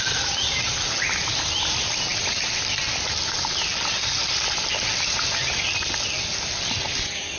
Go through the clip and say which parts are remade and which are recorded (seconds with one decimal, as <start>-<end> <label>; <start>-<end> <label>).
0.0-7.4 recorded